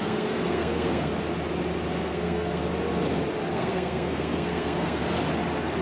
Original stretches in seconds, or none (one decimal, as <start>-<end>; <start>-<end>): 1.1-1.9; 2.6-3.5; 5.0-5.8